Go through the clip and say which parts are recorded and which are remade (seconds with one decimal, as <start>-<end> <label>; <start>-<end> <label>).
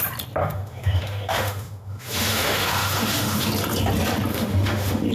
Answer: 0.0-0.4 recorded; 0.4-3.5 remade; 3.5-4.3 recorded; 4.3-5.1 remade